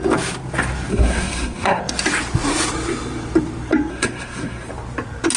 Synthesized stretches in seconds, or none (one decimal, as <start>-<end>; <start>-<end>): 0.9-1.8; 3.9-4.7